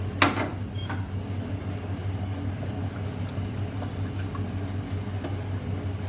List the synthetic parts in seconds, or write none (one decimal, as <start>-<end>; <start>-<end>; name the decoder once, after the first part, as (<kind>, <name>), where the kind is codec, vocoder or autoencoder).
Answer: none